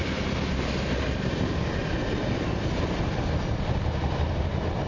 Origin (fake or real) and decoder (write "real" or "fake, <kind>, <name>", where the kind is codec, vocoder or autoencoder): real